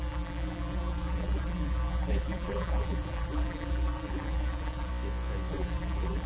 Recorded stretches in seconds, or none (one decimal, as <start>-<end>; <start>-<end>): 4.9-5.5